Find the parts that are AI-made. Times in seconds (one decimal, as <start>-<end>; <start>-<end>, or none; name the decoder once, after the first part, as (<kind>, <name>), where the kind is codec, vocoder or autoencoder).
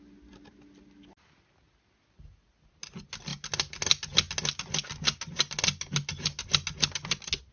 none